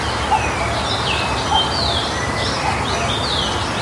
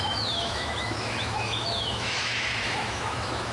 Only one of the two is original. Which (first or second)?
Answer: first